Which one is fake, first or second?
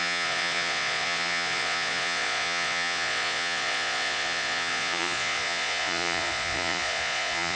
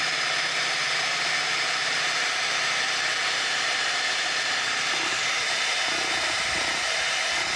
first